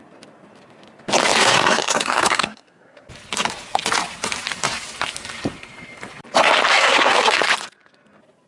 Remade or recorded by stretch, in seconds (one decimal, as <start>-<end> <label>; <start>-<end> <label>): 0.0-1.4 recorded; 1.4-3.1 remade; 3.1-6.7 recorded; 6.7-7.4 remade; 7.4-8.5 recorded